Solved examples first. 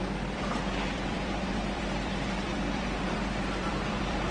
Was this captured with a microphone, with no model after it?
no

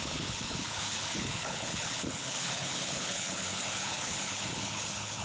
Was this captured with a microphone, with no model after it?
no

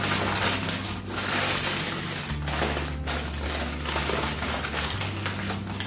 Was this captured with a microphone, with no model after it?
yes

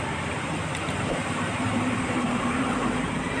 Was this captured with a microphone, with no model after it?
no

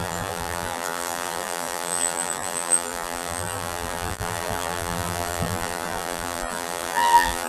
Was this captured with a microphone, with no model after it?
no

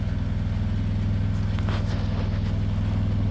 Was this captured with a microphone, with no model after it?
yes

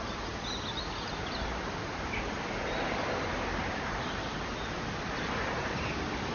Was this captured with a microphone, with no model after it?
yes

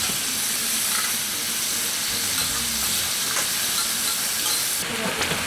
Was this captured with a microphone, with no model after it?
yes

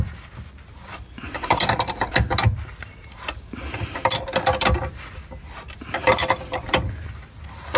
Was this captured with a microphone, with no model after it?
yes